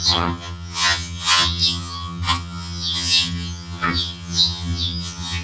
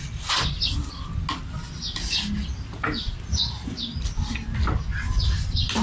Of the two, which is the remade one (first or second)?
first